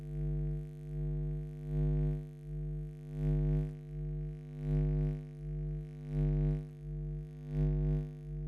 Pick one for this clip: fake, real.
real